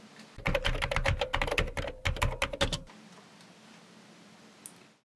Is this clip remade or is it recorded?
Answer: recorded